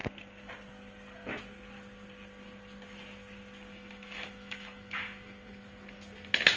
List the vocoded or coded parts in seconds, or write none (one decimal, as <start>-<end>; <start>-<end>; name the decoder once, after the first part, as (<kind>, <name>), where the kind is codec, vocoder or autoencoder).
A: 3.7-5.5 (autoencoder, DAC-VAE)